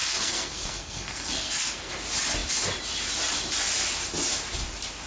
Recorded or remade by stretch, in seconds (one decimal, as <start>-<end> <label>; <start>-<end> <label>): 0.0-1.9 remade; 1.9-5.1 recorded